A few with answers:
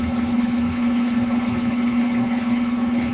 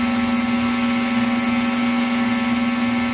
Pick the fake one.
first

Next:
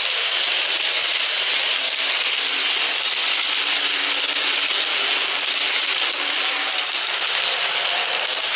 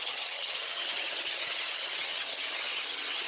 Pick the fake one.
second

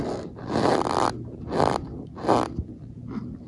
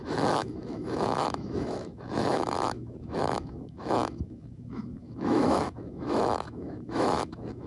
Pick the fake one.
second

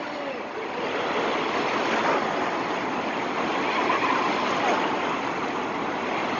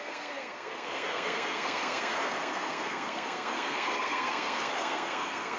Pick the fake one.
second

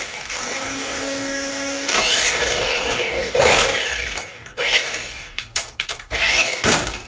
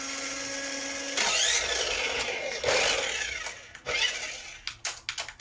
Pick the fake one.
first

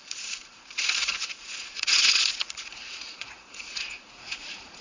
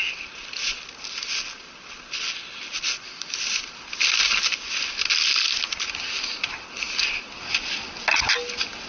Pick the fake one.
first